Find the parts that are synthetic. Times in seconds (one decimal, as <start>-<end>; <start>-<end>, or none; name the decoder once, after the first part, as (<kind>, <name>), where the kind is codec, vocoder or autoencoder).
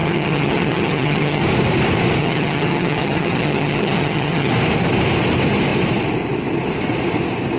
0.0-1.4 (vocoder, HiFi-GAN); 2.2-4.5